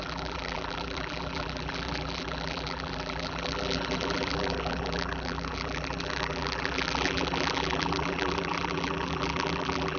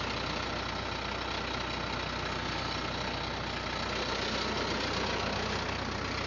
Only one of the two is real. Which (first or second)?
second